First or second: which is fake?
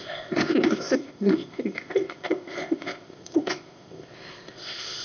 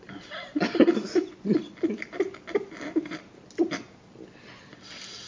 first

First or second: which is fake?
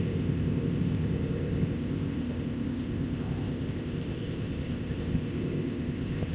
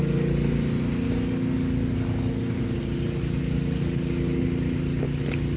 first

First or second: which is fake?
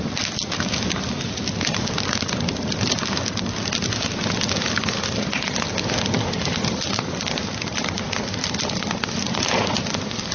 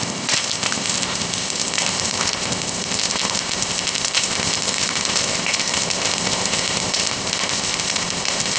second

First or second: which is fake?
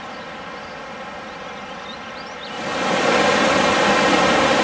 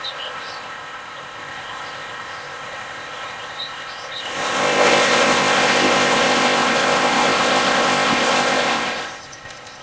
second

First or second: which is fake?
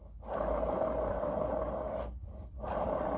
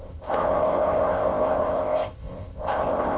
second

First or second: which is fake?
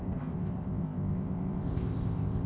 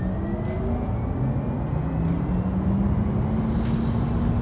first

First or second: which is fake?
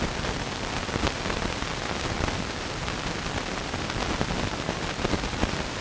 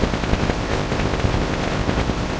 second